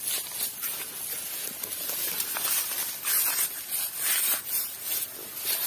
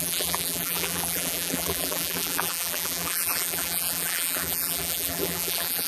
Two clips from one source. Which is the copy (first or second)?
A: second